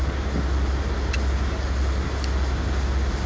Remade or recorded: recorded